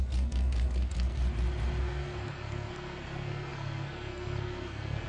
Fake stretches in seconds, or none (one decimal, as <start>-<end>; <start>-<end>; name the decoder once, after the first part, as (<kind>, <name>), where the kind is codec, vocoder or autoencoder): 0.0-1.2 (codec, SNAC); 1.8-5.1